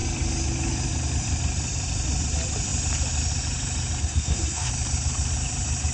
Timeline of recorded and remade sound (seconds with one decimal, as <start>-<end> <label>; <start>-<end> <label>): 0.0-4.0 recorded; 4.0-4.7 remade; 4.7-5.9 recorded